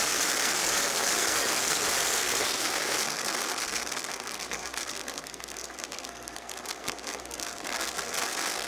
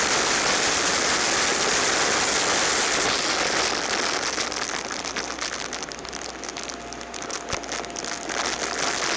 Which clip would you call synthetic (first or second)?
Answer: first